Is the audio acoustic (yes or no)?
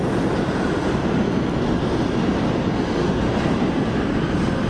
yes